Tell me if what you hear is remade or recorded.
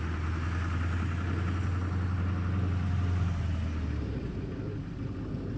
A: recorded